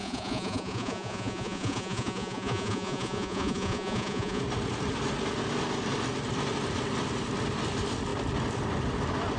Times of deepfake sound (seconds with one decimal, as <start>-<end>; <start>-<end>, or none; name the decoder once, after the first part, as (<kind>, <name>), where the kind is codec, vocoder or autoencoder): 0.0-4.4 (vocoder, Vocos)